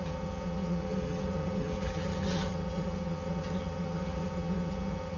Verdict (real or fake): fake